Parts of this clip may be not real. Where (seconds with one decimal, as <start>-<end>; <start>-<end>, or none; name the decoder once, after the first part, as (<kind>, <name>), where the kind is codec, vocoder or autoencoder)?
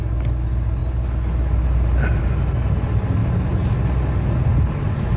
none